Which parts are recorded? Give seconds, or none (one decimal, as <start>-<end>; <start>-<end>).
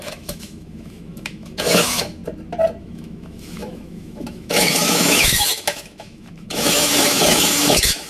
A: 2.2-2.8